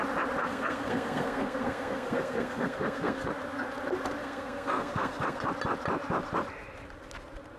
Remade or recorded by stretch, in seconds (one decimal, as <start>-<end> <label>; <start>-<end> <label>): 0.0-0.4 recorded; 0.4-3.3 remade; 3.3-4.2 recorded; 4.2-5.5 remade; 5.5-7.6 recorded